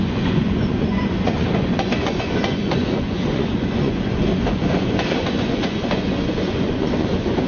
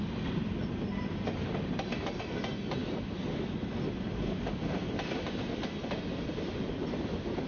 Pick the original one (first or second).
second